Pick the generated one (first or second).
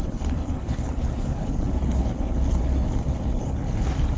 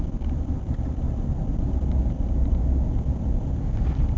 first